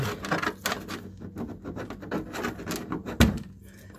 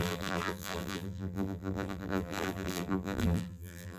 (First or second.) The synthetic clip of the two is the second